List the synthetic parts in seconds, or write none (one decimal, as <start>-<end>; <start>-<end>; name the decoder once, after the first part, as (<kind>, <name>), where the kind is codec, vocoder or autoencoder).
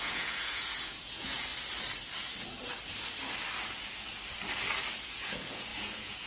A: 0.0-1.5 (vocoder, Vocos); 5.2-6.3